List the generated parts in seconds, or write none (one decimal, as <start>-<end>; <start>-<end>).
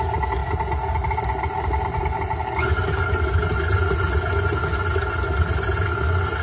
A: none